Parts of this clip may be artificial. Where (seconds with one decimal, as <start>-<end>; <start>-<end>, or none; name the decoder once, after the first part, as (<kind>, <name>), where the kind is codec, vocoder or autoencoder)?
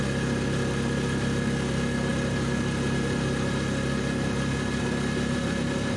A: none